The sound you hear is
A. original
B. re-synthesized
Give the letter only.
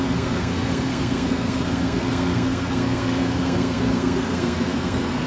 B